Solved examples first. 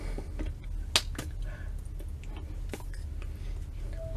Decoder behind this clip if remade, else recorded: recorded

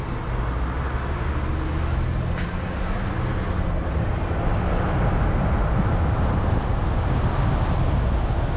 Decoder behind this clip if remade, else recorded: recorded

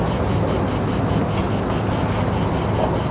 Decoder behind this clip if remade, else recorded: recorded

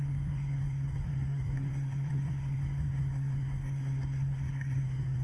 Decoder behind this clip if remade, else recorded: remade, codec, SNAC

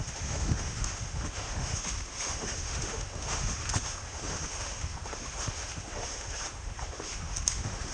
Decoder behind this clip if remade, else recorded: remade, autoencoder, DAC-VAE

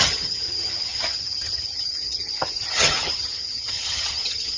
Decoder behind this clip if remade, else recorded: remade, vocoder, HiFi-GAN